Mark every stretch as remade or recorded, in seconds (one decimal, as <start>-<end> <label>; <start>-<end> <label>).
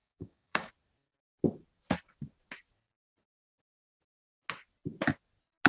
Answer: 0.0-0.7 remade; 0.7-5.7 recorded